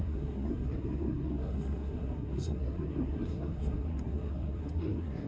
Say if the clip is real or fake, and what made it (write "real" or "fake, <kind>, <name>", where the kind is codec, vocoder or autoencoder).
fake, codec, SNAC